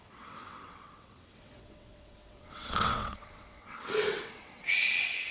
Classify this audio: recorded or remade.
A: remade